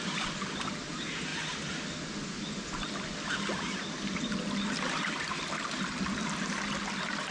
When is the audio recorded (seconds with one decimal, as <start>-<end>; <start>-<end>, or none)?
0.0-7.3